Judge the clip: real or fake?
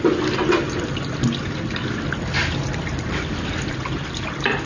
real